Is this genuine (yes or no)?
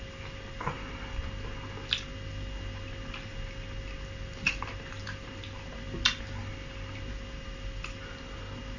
yes